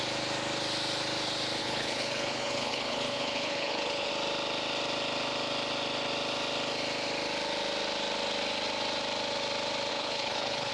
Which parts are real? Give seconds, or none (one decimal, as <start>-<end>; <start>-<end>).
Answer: 0.0-1.6; 4.1-9.9